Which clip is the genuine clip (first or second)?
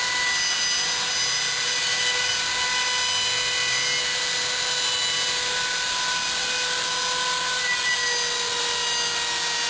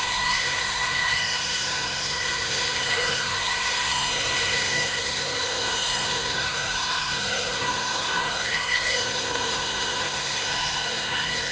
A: first